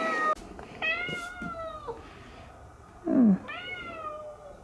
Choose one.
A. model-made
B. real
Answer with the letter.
B